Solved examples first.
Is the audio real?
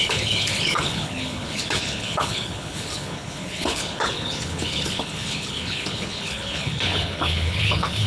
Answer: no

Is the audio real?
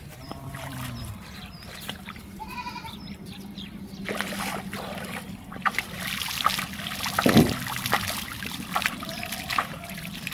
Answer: no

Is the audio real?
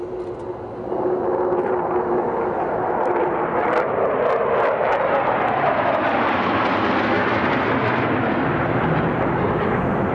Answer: yes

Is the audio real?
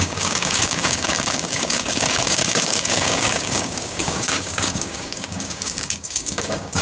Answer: no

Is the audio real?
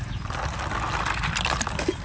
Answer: yes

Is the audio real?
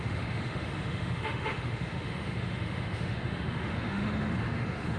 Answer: no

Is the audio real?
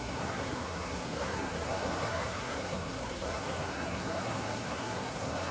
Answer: no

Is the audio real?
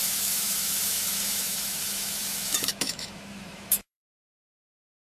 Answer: no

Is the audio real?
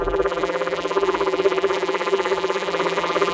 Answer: no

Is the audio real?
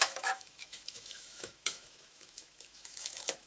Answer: no